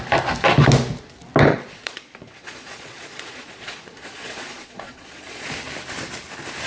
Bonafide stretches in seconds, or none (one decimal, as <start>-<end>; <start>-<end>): 0.0-1.5; 5.5-6.7